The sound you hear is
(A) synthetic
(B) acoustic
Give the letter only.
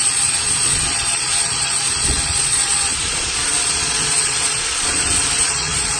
A